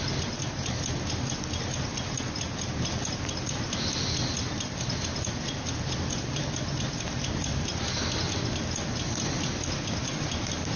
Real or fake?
real